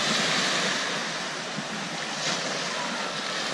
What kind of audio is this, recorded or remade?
recorded